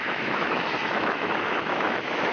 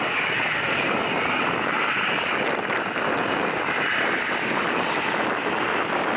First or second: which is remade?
first